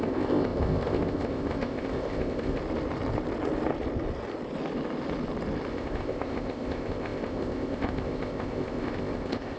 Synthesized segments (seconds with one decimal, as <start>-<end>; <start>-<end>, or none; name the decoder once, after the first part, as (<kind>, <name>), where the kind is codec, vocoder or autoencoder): 0.0-2.6 (codec, ZipCodec); 5.7-9.6

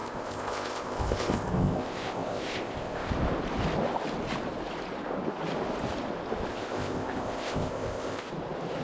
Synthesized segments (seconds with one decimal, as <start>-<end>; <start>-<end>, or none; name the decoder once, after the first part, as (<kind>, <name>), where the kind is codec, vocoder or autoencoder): 0.0-3.1 (codec, ZipCodec); 6.5-8.3

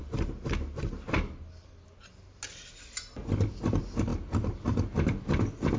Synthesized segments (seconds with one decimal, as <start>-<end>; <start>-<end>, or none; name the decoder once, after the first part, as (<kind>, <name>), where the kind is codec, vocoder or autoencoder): none